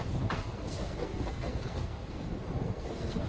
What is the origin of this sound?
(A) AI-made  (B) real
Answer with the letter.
A